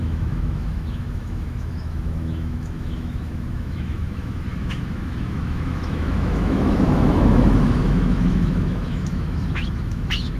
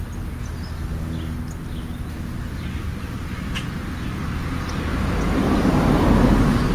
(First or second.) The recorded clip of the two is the second